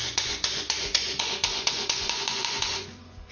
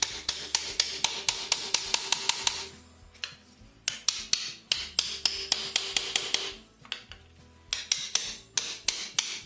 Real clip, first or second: second